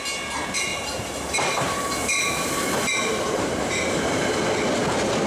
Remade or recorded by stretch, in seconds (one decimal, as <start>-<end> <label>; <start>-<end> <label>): 0.0-0.7 recorded; 0.7-1.8 remade; 1.8-3.1 recorded; 3.1-4.4 remade; 4.4-5.3 recorded

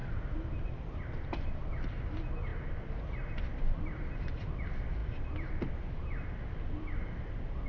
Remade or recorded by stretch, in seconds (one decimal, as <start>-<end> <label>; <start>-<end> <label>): 0.0-1.0 remade; 1.0-7.7 recorded

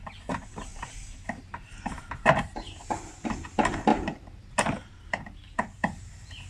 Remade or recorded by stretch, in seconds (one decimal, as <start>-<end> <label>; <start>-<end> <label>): 0.0-0.7 recorded; 0.7-2.1 remade; 2.1-3.9 recorded; 3.9-6.1 remade; 6.1-6.5 recorded

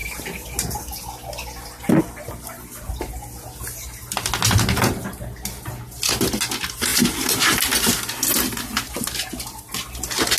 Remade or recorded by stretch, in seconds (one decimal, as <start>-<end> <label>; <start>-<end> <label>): 0.0-2.0 remade; 2.0-6.9 recorded; 6.9-9.0 remade; 9.0-10.4 recorded

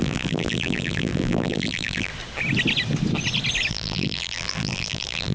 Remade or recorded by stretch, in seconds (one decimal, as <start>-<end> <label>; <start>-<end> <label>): 0.0-2.1 remade; 2.1-3.7 recorded; 3.7-5.3 remade

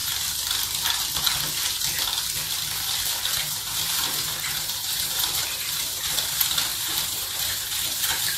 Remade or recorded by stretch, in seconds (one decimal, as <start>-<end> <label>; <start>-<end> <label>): 0.0-3.4 recorded; 3.4-6.3 remade; 6.3-6.7 recorded; 6.7-8.4 remade

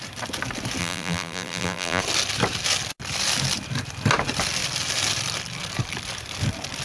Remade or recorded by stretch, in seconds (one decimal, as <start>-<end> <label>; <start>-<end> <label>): 0.0-0.8 recorded; 0.8-2.0 remade; 2.0-6.8 recorded